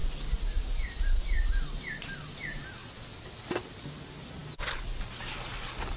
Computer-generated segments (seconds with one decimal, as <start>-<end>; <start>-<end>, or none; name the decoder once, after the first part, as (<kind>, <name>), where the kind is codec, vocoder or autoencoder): none